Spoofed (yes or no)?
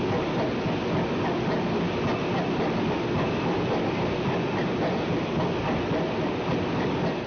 no